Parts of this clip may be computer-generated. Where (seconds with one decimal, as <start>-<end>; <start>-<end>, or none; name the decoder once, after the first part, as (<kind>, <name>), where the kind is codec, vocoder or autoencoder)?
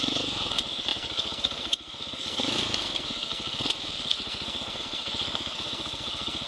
0.0-6.5 (codec, SNAC)